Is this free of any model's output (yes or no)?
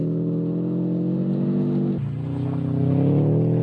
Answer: yes